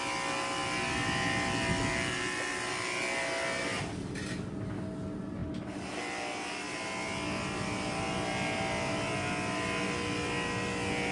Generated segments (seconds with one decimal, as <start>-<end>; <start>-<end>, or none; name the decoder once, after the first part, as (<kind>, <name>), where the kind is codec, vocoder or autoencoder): none